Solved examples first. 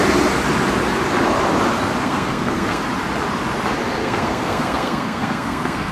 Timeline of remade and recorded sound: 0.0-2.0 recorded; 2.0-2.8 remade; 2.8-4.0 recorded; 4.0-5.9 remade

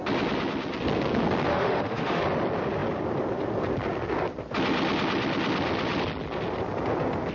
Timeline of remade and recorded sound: 0.0-1.5 recorded; 1.5-2.2 remade; 2.2-7.3 recorded

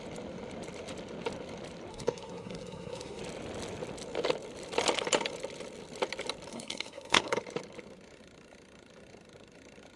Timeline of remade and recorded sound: 0.0-1.9 recorded; 1.9-3.2 remade; 3.2-6.5 recorded; 6.5-7.4 remade; 7.4-10.0 recorded

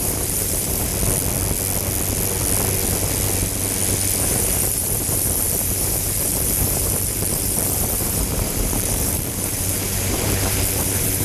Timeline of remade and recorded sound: 0.0-0.9 remade; 0.9-4.2 recorded; 4.2-11.2 remade

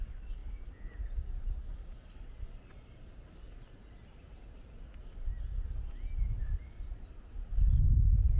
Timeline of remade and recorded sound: 0.0-8.4 recorded

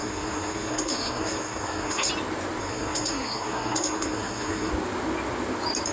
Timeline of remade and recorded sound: 0.0-2.1 remade; 2.1-2.6 recorded; 2.6-4.7 remade; 4.7-5.9 recorded